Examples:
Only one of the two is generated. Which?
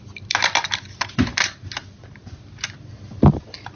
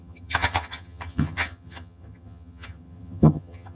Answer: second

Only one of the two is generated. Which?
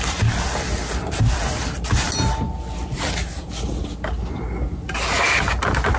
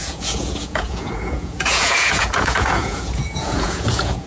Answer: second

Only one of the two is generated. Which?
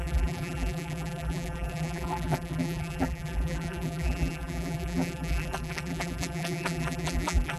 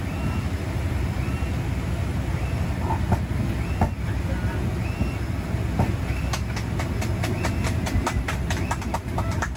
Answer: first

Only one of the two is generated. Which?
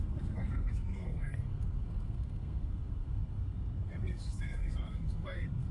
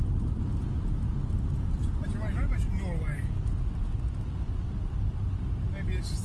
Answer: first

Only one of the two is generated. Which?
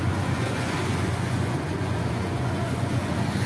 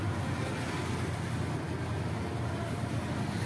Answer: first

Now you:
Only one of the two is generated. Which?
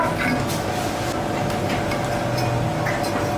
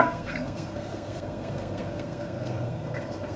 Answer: second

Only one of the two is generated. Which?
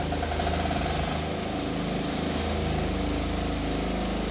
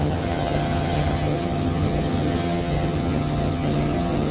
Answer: second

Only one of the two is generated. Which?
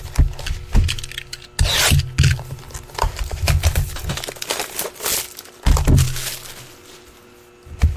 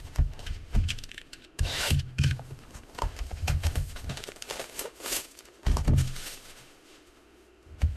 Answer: second